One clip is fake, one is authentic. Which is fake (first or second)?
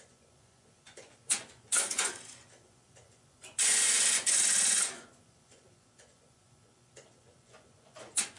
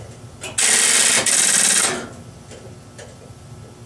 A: first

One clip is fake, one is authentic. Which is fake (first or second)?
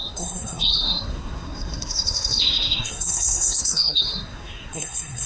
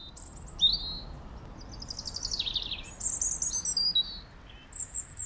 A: first